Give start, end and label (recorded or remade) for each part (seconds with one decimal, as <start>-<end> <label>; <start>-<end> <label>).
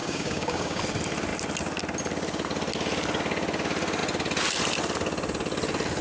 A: 0.0-0.8 remade; 0.8-6.0 recorded